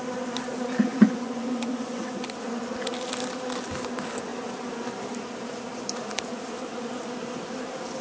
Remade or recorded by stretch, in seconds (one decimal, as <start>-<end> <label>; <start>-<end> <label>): 0.0-0.9 recorded; 0.9-2.1 remade; 2.1-8.0 recorded